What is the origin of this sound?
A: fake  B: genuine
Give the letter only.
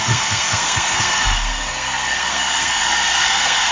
A